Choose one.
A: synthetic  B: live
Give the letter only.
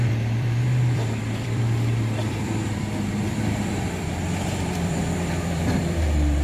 A